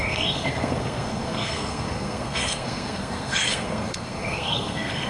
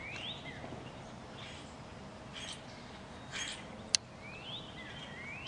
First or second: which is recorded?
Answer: second